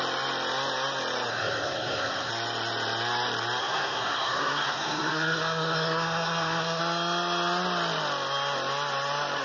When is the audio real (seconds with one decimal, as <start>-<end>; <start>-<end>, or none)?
0.0-1.3; 2.3-3.6; 6.8-9.4